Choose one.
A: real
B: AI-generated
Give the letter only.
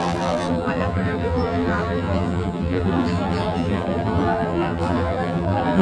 B